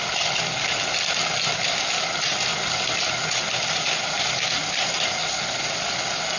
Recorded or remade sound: recorded